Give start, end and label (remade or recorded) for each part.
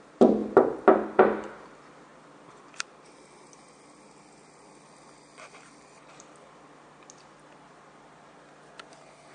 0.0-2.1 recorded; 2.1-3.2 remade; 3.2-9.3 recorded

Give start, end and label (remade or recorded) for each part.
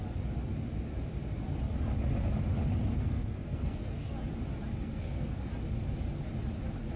0.0-3.0 recorded; 3.0-4.1 remade; 4.1-4.8 recorded; 4.8-5.5 remade; 5.5-7.0 recorded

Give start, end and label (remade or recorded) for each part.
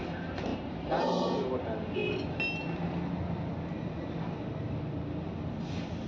0.0-6.1 recorded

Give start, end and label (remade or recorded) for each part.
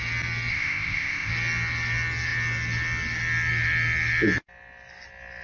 0.0-0.5 recorded; 0.5-1.3 remade; 1.3-5.4 recorded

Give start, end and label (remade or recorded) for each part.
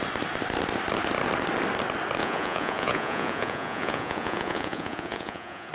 0.0-2.2 recorded; 2.2-5.7 remade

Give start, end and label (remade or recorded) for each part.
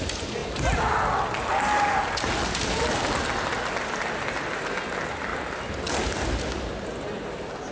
0.0-7.7 recorded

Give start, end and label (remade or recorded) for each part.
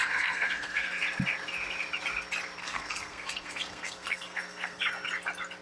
0.0-1.0 remade; 1.0-2.6 recorded; 2.6-4.8 remade; 4.8-5.6 recorded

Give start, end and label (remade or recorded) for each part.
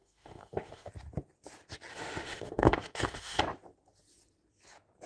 0.0-0.9 remade; 0.9-1.9 recorded; 1.9-3.4 remade; 3.4-5.1 recorded